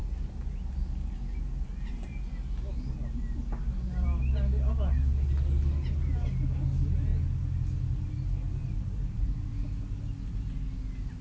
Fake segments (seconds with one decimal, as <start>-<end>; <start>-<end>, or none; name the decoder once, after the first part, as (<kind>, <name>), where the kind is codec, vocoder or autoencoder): 8.6-9.5 (vocoder, BigVGAN v2)